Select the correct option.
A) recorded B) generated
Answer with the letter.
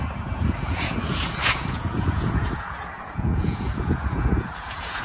B